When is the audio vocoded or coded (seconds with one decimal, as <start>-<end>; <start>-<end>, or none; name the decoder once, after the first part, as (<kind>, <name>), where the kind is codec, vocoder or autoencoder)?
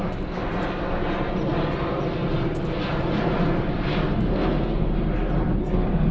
0.0-0.5 (codec, SNAC); 4.2-4.9; 5.6-6.1